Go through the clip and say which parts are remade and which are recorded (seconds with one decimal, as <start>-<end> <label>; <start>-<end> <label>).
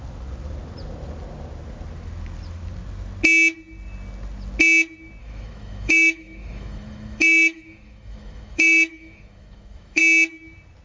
0.0-5.2 recorded; 5.2-10.0 remade; 10.0-10.8 recorded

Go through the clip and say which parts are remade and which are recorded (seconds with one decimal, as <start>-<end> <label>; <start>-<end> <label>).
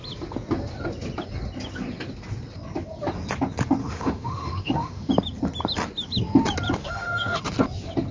0.0-3.8 recorded; 3.8-5.1 remade; 5.1-6.8 recorded; 6.8-7.4 remade; 7.4-8.1 recorded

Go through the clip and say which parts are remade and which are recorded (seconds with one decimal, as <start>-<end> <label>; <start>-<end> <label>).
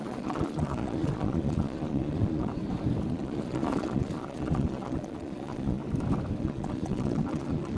0.0-2.5 remade; 2.5-3.1 recorded; 3.1-5.8 remade; 5.8-6.4 recorded; 6.4-7.8 remade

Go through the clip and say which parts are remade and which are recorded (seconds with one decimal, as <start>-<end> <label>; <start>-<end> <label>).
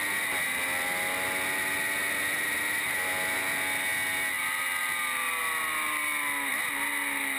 0.0-7.4 recorded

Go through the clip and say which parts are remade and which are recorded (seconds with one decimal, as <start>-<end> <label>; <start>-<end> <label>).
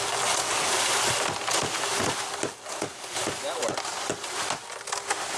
0.0-3.6 recorded; 3.6-4.1 remade; 4.1-5.4 recorded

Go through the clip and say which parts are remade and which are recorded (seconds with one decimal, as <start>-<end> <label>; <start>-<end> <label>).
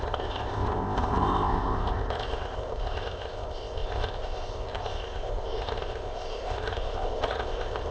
0.0-7.9 remade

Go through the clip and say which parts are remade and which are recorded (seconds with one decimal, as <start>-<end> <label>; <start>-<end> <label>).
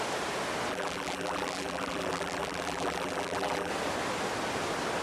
0.0-0.7 recorded; 0.7-3.7 remade; 3.7-5.0 recorded